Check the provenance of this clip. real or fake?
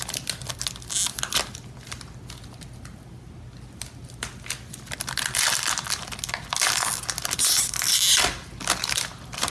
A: real